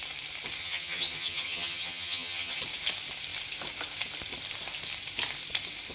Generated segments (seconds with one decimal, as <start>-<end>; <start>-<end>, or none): 0.6-2.6